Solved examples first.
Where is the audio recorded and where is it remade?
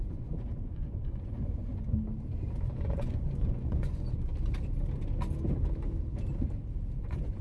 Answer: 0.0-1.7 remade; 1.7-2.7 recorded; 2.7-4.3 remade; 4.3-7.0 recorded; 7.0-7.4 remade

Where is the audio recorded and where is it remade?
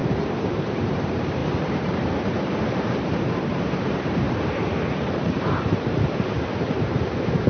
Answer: 0.0-7.5 remade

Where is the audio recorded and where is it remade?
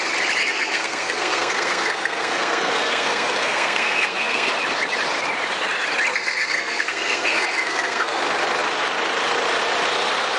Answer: 0.0-0.4 recorded; 0.4-4.5 remade; 4.5-6.1 recorded; 6.1-8.2 remade; 8.2-10.4 recorded